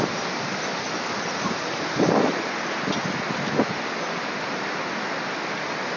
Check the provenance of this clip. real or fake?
real